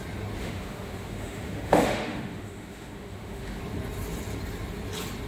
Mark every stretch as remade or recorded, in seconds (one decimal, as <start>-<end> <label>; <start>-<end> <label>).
0.0-0.4 recorded; 0.4-3.6 remade; 3.6-5.3 recorded